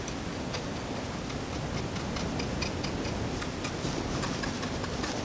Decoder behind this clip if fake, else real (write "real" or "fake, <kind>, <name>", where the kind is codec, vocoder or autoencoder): real